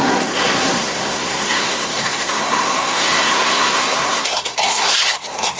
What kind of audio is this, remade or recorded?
remade